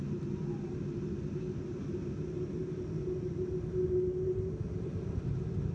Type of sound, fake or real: real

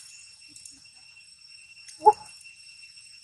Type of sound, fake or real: fake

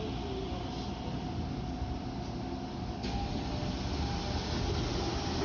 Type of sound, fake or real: real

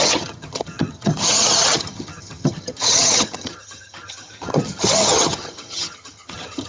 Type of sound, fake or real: fake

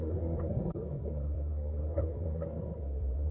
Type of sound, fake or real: fake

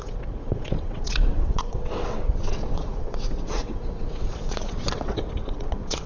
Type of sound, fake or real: fake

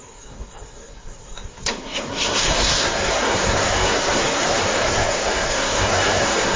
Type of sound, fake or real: fake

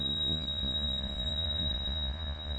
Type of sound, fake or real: fake